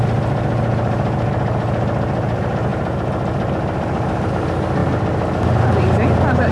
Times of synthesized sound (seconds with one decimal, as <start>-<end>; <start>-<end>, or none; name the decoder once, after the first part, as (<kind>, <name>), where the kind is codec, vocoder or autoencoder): none